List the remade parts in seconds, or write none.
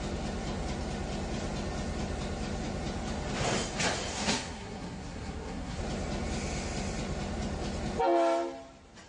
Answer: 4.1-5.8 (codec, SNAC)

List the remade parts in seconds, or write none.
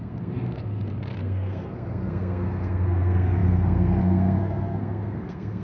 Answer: 0.0-5.6 (codec, SNAC)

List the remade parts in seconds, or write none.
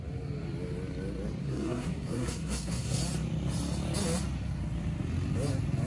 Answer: 1.4-3.0 (codec, SNAC)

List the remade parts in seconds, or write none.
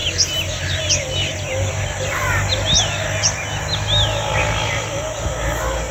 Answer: none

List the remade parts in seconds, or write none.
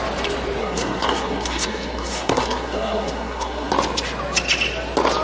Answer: 0.6-3.7 (codec, SNAC)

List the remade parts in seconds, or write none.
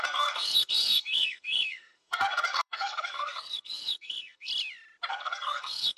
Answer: 0.0-4.5 (codec, SNAC); 5.1-6.0